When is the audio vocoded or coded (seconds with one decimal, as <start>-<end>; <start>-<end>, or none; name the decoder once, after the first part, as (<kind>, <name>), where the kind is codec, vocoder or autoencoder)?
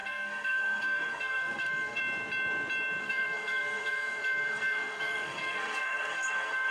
0.0-2.0 (codec, SNAC); 3.0-6.7